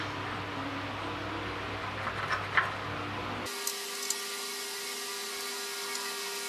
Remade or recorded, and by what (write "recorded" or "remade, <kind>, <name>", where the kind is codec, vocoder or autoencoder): recorded